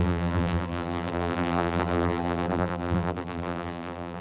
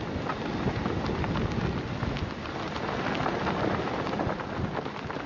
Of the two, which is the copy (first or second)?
first